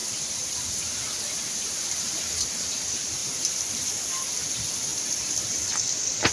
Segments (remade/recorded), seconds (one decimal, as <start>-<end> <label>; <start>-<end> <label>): 0.0-2.6 remade; 2.6-3.2 recorded; 3.2-4.1 remade; 4.1-4.9 recorded; 4.9-5.7 remade; 5.7-6.3 recorded